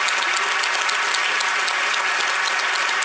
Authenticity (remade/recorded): recorded